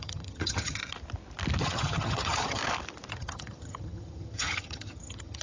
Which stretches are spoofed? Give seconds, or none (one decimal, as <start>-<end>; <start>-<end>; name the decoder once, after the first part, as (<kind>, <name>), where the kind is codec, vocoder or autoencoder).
0.0-0.8 (vocoder, HiFi-GAN); 1.6-2.6; 3.1-5.4